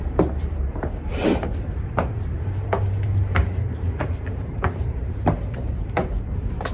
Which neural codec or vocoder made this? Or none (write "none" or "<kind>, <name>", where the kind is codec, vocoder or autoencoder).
vocoder, BigVGAN v2